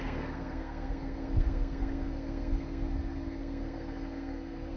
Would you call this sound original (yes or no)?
no